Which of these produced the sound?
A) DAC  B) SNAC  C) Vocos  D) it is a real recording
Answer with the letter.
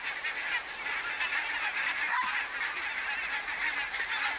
D